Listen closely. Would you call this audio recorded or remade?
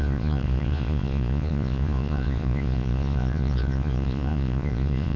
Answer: remade